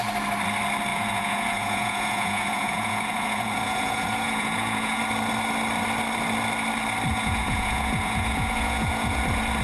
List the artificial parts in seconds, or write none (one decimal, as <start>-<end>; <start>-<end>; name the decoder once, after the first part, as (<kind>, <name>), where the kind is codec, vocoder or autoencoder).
0.9-5.0 (vocoder, Vocos); 7.1-9.2